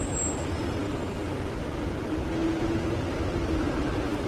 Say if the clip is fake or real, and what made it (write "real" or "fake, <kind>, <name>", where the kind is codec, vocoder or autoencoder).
real